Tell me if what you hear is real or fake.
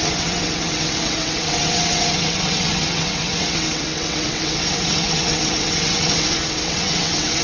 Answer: fake